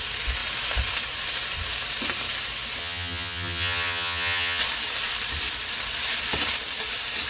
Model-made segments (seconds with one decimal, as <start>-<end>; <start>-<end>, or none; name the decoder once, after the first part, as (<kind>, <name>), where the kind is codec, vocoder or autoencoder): 2.8-4.6 (vocoder, HiFi-GAN)